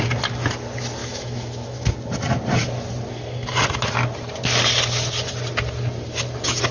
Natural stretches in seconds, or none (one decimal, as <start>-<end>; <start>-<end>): 0.0-1.0; 1.9-6.7